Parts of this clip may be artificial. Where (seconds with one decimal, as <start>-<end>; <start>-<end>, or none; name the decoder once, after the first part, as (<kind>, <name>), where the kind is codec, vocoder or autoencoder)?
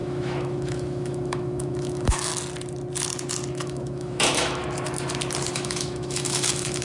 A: 0.0-2.3 (autoencoder, DAC-VAE); 3.5-4.6; 5.5-6.8